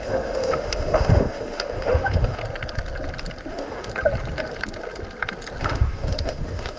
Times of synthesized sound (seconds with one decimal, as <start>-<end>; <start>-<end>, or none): 0.0-2.4; 3.5-3.9; 5.6-6.8